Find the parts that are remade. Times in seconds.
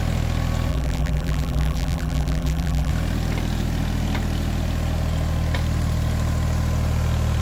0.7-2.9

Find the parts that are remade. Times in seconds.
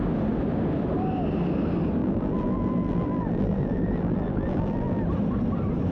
2.0-5.0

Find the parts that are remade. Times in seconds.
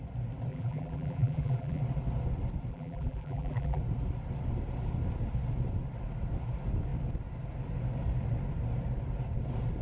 0.5-1.8; 2.7-3.8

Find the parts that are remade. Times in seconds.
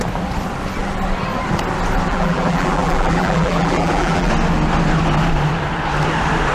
2.1-4.3